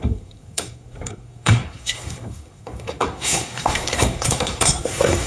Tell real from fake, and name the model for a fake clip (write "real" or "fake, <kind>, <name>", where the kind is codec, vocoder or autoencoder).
fake, codec, SNAC